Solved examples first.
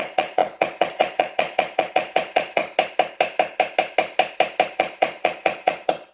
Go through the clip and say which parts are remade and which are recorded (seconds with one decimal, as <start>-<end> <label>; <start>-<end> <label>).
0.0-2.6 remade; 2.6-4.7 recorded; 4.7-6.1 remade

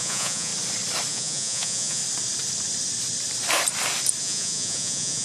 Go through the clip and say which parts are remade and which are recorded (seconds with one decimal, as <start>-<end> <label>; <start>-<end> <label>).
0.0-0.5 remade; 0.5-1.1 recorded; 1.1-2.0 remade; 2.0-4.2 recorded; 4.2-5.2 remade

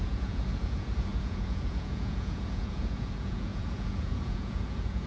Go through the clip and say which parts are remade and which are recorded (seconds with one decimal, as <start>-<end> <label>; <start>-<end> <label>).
0.0-5.1 remade

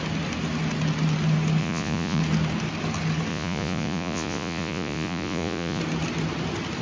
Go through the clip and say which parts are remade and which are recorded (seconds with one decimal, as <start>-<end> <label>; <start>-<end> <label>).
0.0-1.6 recorded; 1.6-2.2 remade; 2.2-3.3 recorded; 3.3-5.8 remade; 5.8-6.8 recorded